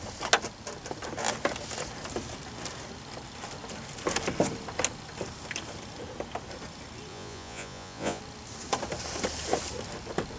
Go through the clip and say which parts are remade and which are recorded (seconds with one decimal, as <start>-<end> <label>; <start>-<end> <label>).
0.0-7.1 recorded; 7.1-8.2 remade; 8.2-10.4 recorded